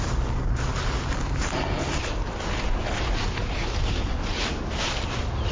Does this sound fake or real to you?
real